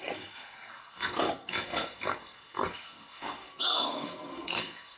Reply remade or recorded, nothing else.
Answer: remade